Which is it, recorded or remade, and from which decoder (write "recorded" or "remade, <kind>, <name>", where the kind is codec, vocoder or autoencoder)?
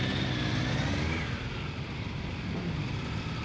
recorded